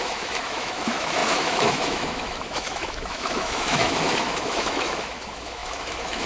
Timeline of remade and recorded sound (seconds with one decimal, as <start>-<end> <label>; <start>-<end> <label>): 0.0-6.3 remade